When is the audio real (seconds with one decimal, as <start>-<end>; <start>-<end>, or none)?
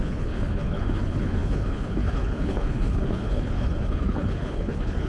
none